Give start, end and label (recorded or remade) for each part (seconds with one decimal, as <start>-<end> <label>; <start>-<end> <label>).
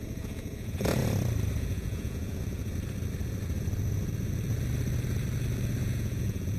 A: 0.0-1.0 remade; 1.0-1.6 recorded; 1.6-2.6 remade; 2.6-5.8 recorded; 5.8-6.6 remade